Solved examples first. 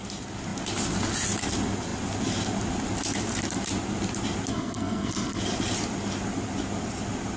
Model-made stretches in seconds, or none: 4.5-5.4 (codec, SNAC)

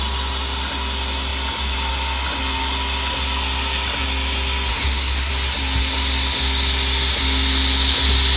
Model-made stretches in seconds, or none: 4.7-5.3 (codec, SNAC)

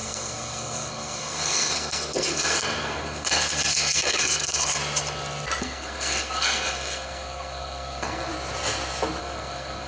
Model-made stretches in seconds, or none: 0.0-4.8 (codec, SNAC); 5.6-8.3; 9.2-9.9

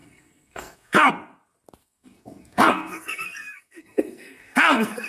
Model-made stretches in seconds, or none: 0.0-1.1 (codec, SNAC); 1.8-5.1

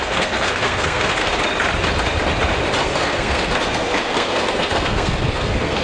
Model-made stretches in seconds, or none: 0.0-1.3 (codec, SNAC); 2.8-5.8

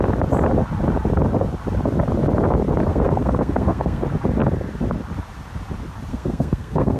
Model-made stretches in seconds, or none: 2.9-4.0 (codec, SNAC); 6.1-7.0